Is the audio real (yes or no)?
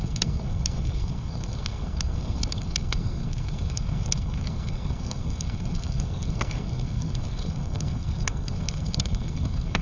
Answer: no